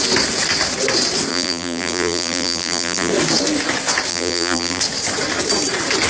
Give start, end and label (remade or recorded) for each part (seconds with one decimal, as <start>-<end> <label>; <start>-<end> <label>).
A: 0.0-1.3 recorded; 1.3-3.1 remade; 3.1-4.1 recorded; 4.1-4.8 remade; 4.8-6.1 recorded